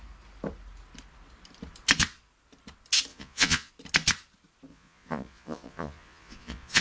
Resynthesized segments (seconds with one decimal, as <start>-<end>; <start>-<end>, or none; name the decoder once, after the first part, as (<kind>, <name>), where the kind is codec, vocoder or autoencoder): 3.1-3.7 (vocoder, Vocos); 4.7-6.8